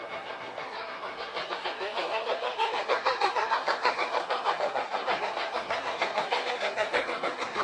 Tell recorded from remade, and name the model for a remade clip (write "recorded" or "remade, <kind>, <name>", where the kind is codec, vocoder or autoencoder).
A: remade, codec, SNAC